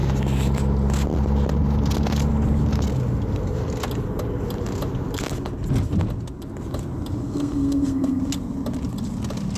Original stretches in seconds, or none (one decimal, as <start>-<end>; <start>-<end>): 0.0-7.2; 8.2-9.6

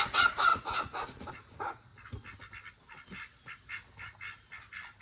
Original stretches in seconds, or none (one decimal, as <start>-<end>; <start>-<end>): 1.9-5.0

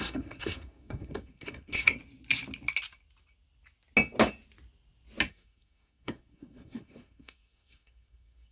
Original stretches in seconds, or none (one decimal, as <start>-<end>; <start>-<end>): 2.0-5.3

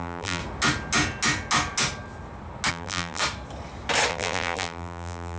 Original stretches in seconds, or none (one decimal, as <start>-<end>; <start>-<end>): 0.4-2.7; 3.2-4.1

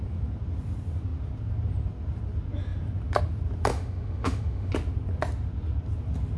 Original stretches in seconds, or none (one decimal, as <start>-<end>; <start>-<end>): 0.0-3.7; 4.7-6.4

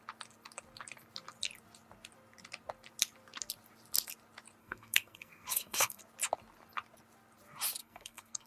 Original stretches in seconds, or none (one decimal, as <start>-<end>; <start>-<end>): 0.0-4.6; 6.0-7.8

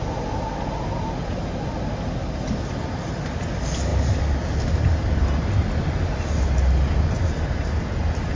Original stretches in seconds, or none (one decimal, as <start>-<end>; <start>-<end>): 0.0-8.4